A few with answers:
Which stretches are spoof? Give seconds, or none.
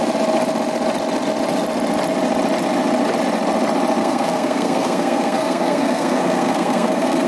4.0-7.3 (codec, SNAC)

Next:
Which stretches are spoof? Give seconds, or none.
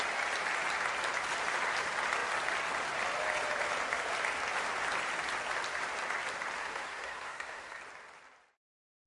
6.6-7.8 (codec, SNAC)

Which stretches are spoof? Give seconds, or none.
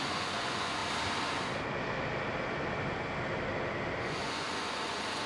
0.0-0.8 (vocoder, Vocos); 4.0-5.3